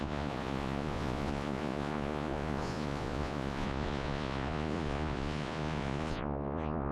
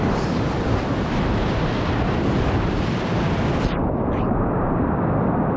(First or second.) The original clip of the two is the second